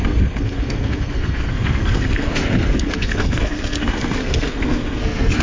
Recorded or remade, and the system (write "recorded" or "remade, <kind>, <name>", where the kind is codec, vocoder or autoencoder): remade, codec, SNAC